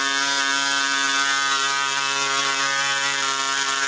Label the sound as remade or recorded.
recorded